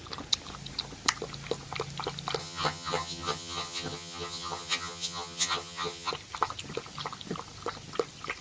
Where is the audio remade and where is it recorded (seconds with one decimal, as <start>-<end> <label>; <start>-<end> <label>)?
0.0-2.4 recorded; 2.4-6.1 remade; 6.1-8.4 recorded